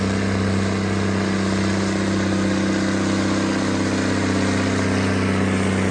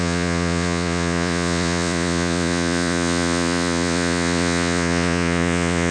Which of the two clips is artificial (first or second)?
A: second